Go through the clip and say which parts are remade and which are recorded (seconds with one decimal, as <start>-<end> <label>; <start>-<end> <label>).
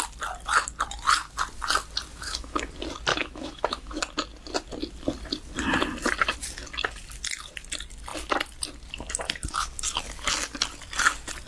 0.0-2.1 recorded; 2.1-2.6 remade; 2.6-3.1 recorded; 3.1-4.0 remade; 4.0-11.5 recorded